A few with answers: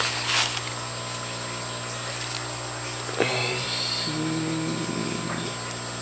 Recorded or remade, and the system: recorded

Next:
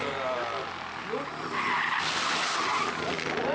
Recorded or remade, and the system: recorded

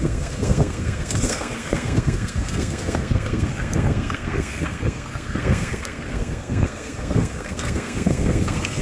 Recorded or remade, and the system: remade, codec, SNAC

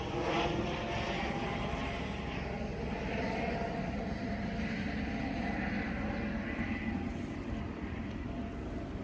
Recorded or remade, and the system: recorded